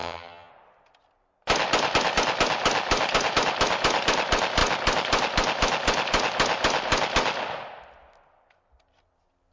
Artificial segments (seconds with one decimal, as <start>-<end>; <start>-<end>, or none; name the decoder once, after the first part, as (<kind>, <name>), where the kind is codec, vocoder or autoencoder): 0.0-0.5 (vocoder, HiFi-GAN)